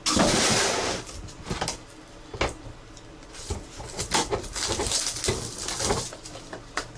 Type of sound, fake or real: real